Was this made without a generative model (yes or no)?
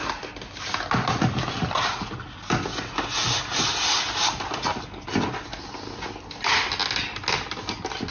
yes